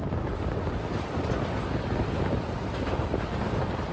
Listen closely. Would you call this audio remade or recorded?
recorded